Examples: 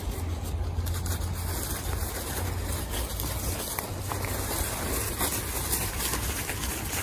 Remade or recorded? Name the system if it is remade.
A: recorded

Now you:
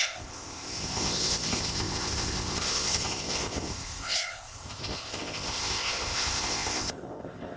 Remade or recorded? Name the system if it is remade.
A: remade, codec, ZipCodec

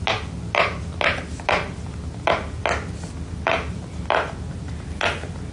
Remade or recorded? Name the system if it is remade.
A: recorded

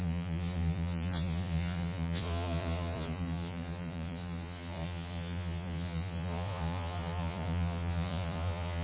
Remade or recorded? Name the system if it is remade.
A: remade, vocoder, Vocos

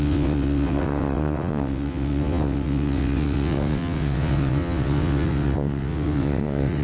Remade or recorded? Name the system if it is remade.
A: remade, vocoder, WaveNeXt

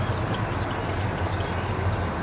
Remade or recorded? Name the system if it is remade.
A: recorded